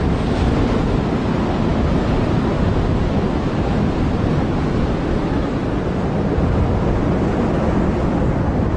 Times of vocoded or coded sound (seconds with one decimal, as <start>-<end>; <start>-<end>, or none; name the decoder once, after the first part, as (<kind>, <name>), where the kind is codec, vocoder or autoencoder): none